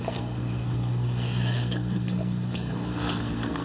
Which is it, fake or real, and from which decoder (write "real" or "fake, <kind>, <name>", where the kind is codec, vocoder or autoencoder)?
fake, codec, SNAC